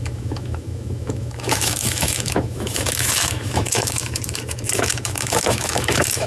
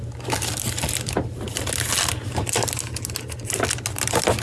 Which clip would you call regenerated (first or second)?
first